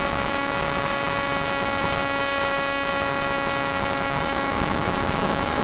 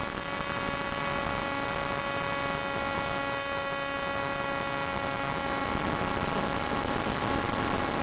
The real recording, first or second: second